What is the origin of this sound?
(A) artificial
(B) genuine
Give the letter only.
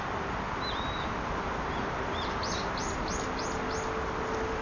B